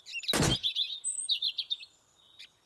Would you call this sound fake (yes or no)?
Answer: no